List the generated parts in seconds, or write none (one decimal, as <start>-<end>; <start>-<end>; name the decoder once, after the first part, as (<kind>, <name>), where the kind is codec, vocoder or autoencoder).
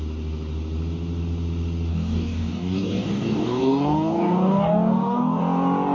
1.9-5.4 (codec, DAC)